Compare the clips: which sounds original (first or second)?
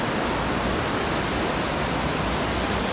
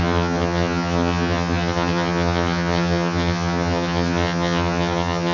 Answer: first